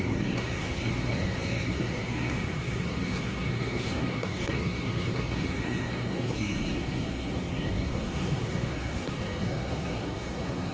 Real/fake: fake